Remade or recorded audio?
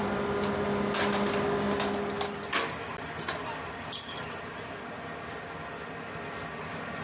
recorded